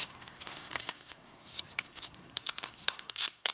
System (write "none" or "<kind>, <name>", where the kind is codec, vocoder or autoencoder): codec, SNAC